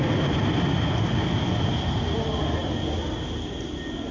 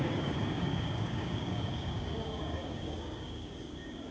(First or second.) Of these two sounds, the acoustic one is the first